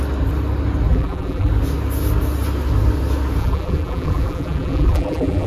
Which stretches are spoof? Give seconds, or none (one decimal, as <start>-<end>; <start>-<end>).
0.9-1.5; 3.4-5.5